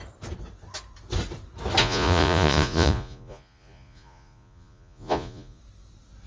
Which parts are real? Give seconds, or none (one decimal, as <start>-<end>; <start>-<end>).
0.0-1.8; 5.6-6.3